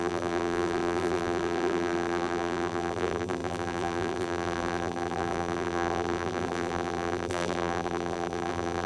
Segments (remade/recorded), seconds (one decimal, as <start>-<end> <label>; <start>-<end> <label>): 0.0-8.9 remade